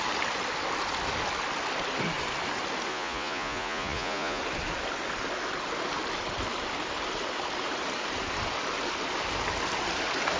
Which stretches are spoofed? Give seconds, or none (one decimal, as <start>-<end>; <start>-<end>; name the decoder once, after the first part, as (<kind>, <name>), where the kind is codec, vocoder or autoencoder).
2.9-4.4 (vocoder, Vocos)